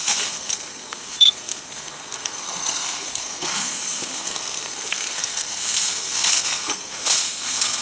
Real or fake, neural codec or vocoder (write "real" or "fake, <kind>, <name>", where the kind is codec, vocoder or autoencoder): fake, codec, SNAC